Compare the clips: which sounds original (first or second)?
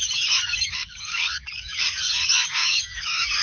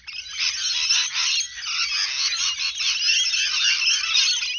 second